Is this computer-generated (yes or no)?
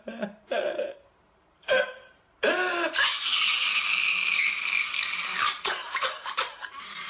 yes